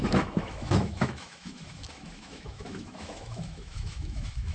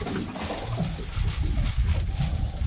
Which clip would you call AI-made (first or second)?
first